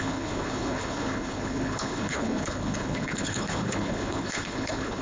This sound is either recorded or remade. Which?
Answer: remade